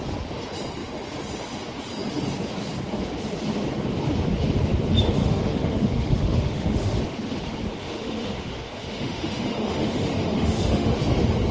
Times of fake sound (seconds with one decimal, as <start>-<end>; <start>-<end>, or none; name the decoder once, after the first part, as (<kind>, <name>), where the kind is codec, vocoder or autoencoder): 5.2-7.0 (autoencoder, DAC-VAE); 7.7-10.9